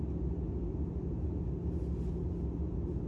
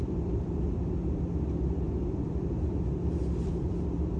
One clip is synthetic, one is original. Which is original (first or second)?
first